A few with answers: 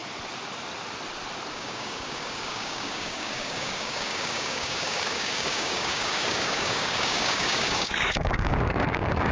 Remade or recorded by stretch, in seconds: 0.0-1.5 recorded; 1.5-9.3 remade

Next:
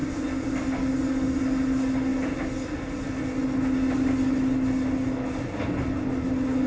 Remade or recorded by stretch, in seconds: 0.0-6.7 recorded